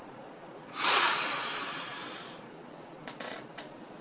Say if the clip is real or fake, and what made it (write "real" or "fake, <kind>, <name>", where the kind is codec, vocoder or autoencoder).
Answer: fake, vocoder, Vocos